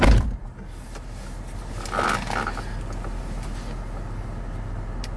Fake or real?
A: real